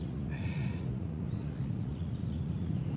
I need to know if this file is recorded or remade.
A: remade